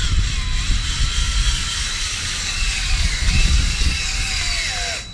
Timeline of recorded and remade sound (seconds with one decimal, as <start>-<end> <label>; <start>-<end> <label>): 0.0-1.2 recorded; 1.2-4.3 remade; 4.3-5.1 recorded